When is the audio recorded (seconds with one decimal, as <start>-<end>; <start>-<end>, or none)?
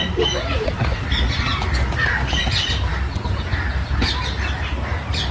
0.0-5.3